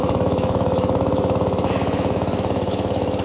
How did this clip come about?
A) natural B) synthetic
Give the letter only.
B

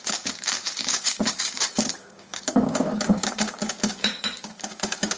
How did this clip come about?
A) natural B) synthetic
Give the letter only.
B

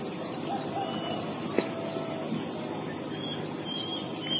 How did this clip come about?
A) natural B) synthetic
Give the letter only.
A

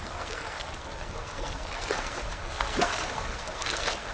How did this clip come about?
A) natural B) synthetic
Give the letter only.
B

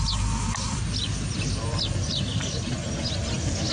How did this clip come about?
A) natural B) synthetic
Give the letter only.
A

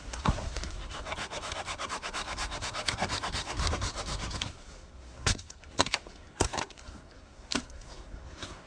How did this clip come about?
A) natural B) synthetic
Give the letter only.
B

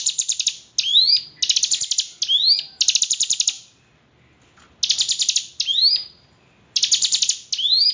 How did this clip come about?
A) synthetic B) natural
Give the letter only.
B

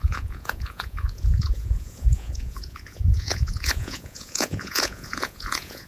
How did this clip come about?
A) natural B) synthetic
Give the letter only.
B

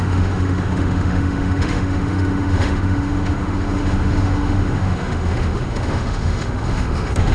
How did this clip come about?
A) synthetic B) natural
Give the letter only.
A